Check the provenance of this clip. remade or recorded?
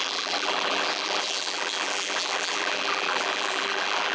remade